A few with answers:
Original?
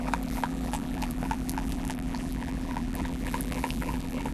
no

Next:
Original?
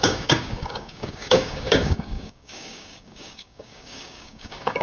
no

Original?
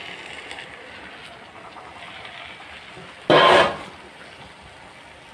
yes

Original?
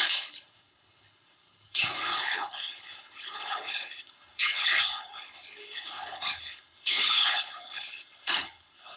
no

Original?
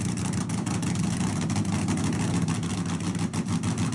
yes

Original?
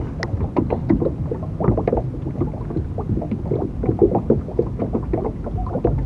yes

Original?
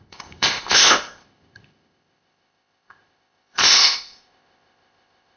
no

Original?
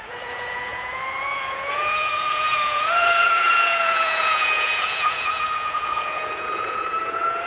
no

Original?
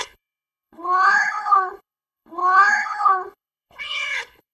no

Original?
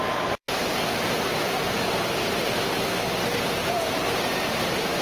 no